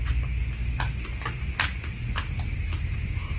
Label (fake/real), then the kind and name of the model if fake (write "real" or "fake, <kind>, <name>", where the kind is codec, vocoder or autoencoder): real